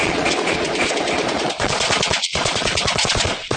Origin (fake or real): fake